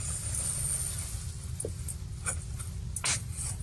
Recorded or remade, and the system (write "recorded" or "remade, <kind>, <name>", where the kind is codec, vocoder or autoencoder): recorded